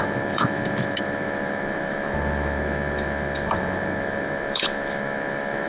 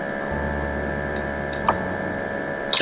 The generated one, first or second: first